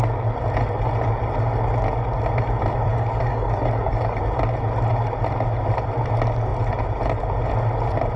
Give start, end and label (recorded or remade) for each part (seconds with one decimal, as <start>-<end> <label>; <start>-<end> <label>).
0.0-2.9 recorded; 2.9-4.2 remade; 4.2-8.2 recorded